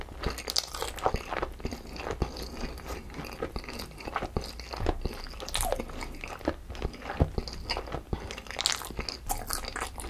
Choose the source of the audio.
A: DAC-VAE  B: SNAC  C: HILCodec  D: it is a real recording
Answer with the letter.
D